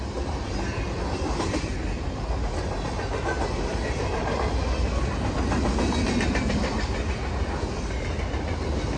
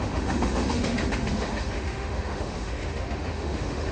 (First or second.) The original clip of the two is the first